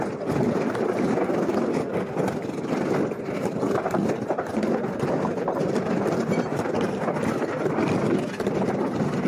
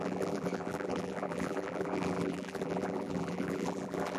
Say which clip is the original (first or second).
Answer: first